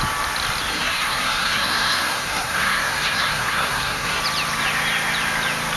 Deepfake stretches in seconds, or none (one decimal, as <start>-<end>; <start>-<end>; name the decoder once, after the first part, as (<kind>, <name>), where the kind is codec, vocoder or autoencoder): 0.7-4.2 (codec, SNAC)

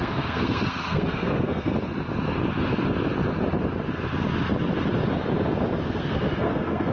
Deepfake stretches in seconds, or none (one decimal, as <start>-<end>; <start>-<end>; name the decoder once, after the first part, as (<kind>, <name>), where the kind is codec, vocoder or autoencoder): 0.0-1.7 (codec, SNAC); 5.8-6.9

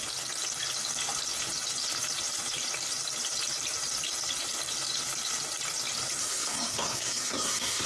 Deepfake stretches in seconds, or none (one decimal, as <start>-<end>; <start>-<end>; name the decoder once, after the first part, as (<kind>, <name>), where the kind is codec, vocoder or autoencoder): 6.2-7.9 (codec, SNAC)

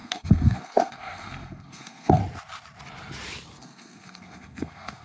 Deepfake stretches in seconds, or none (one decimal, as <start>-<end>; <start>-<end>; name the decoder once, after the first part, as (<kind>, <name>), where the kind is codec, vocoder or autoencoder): 0.0-2.2 (codec, SNAC); 3.6-5.0

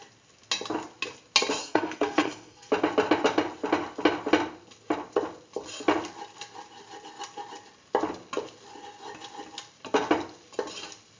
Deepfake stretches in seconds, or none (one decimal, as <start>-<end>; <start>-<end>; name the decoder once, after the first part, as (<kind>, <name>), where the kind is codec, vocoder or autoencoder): 1.6-2.7 (codec, SNAC)